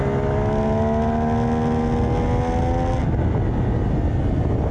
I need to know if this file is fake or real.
real